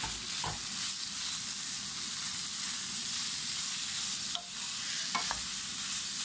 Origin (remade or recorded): recorded